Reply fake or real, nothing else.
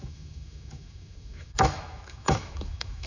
fake